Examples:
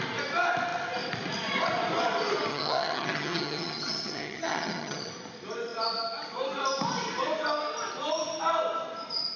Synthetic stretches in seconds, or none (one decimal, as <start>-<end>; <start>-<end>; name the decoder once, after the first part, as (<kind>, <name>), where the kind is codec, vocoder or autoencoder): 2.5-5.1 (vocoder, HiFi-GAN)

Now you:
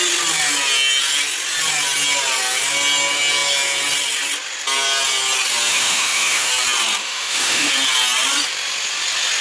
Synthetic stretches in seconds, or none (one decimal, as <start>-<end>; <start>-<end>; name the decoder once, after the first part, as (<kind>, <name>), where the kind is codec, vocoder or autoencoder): 5.7-6.5 (autoencoder, DAC-VAE); 7.0-7.7

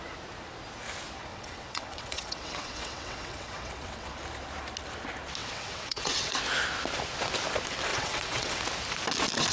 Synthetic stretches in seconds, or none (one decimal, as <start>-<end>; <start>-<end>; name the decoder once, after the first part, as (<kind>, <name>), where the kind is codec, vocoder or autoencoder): 1.3-4.1 (vocoder, WaveNeXt); 5.4-6.3; 7.9-8.6

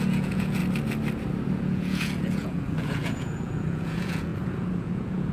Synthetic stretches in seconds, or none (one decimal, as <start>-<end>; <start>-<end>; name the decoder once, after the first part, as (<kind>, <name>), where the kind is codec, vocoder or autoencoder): 0.0-0.6 (vocoder, Vocos); 1.5-5.3

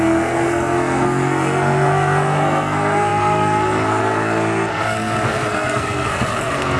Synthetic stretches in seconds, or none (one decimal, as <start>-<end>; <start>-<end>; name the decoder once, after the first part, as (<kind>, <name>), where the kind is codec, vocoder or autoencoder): 0.0-6.8 (codec, SNAC)